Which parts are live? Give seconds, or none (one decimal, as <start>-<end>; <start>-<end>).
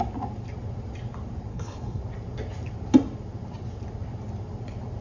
0.0-1.5; 2.0-5.0